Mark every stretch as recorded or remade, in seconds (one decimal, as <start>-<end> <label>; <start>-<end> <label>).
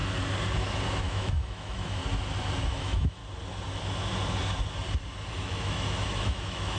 0.0-1.0 recorded; 1.0-2.0 remade; 2.0-2.6 recorded; 2.6-3.2 remade; 3.2-5.3 recorded; 5.3-6.8 remade